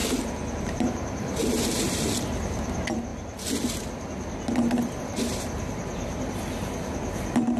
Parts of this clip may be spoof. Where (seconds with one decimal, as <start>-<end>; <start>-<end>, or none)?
0.6-3.1; 5.0-6.1